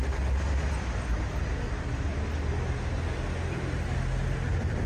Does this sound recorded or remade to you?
recorded